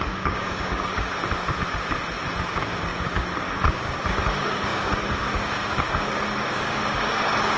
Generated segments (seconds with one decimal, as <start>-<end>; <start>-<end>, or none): 0.0-1.2; 2.5-7.6